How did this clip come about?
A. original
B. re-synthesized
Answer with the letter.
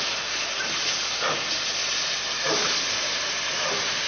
A